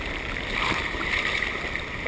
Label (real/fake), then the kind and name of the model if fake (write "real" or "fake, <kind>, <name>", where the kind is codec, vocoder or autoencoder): real